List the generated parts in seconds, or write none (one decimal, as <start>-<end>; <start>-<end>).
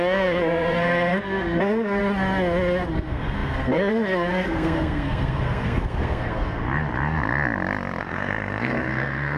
0.0-2.0; 2.9-6.6; 8.0-9.4